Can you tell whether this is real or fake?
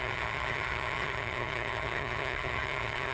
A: fake